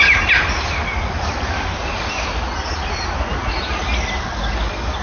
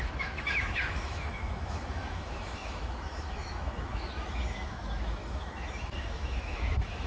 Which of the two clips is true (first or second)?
first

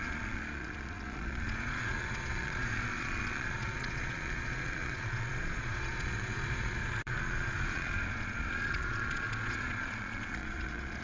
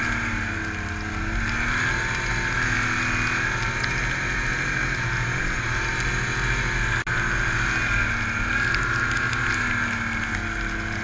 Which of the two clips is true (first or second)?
second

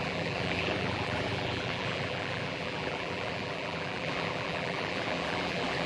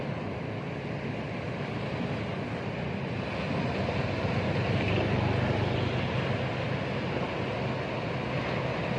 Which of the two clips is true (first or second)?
second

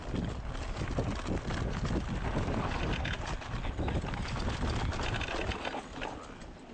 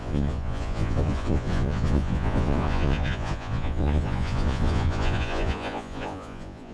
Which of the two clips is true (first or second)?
first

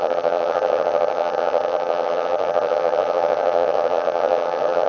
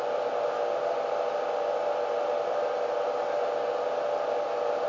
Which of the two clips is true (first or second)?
second